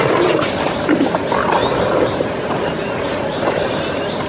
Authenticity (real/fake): real